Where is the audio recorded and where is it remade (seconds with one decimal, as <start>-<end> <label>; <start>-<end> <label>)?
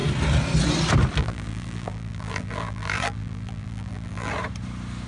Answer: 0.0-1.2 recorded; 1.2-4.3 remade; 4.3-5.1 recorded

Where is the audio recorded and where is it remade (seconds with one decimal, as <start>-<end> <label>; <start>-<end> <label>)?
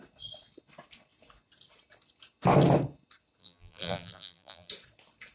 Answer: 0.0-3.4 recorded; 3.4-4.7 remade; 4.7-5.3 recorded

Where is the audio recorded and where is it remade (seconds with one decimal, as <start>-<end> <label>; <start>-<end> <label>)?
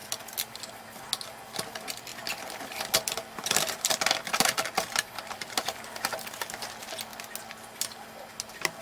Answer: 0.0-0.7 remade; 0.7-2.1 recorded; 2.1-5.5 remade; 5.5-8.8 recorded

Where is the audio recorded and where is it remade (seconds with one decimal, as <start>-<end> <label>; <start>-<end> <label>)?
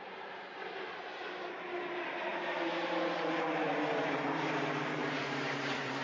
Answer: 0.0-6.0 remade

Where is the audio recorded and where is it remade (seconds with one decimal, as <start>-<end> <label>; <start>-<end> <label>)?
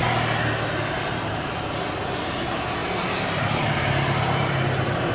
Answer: 0.0-2.2 recorded; 2.2-5.1 remade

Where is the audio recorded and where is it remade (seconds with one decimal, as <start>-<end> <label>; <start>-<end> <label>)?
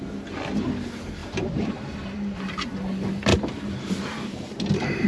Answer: 0.0-1.2 recorded; 1.2-2.5 remade; 2.5-3.3 recorded; 3.3-5.1 remade